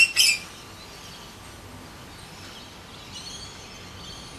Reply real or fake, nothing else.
real